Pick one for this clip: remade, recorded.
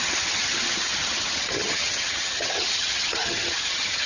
remade